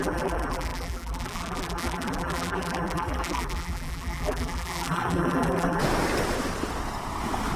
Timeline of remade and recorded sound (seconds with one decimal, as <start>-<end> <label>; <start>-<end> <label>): 0.0-5.8 remade; 5.8-7.6 recorded

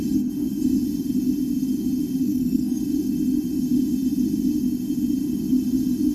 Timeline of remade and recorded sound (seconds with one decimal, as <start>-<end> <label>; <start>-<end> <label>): 0.0-2.2 recorded; 2.2-2.8 remade; 2.8-6.1 recorded

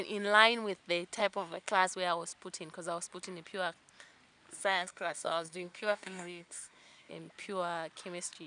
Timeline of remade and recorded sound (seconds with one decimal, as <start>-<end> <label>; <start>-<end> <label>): 0.0-1.2 recorded; 1.2-1.9 remade; 1.9-4.6 recorded; 4.6-7.1 remade; 7.1-8.5 recorded

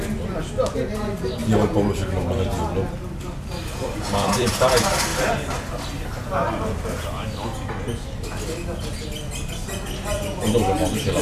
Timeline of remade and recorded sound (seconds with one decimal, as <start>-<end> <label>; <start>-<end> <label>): 0.0-3.6 recorded; 3.6-4.5 remade; 4.5-11.2 recorded

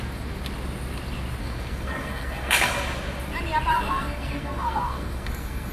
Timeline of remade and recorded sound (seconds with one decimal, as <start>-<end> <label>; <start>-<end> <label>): 0.0-1.4 recorded; 1.4-2.7 remade; 2.7-3.7 recorded; 3.7-5.7 remade